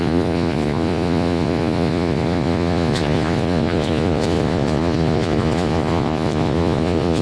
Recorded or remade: remade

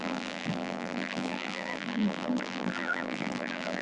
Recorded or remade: remade